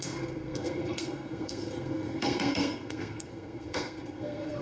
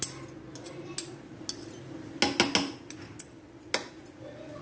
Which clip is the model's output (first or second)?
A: first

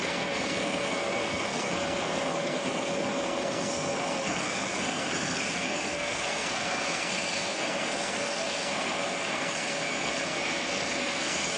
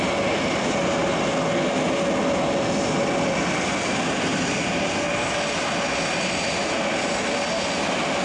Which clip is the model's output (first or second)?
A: first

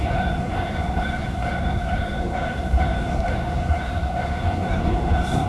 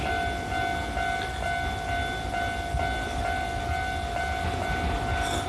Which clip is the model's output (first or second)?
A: first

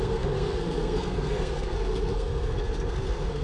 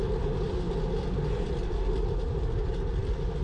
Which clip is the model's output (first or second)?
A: first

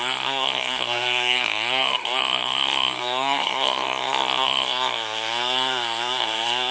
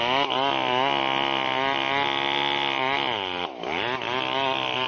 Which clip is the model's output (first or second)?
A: first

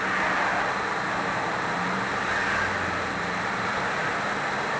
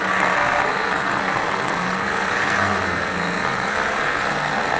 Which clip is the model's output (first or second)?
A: second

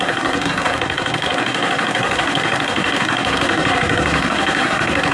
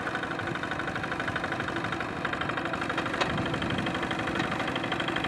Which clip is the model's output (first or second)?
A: first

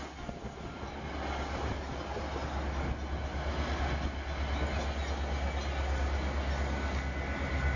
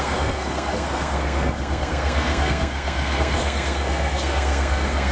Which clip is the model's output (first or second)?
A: second